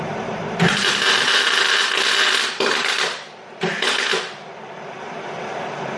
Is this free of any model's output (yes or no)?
no